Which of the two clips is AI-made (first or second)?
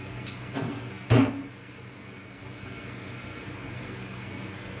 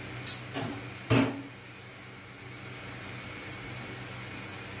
first